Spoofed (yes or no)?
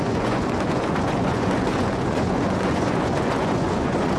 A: yes